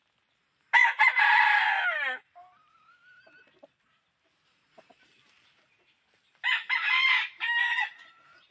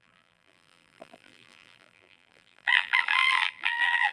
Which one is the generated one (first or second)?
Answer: second